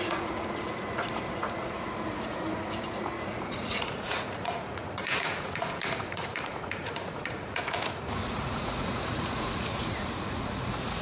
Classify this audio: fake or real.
fake